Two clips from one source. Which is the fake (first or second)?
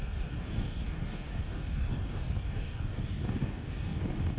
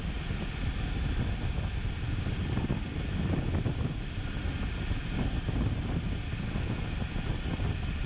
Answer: first